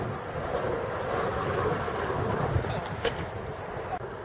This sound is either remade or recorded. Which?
recorded